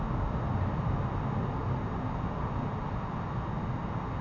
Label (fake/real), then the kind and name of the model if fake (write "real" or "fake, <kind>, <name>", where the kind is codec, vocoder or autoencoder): real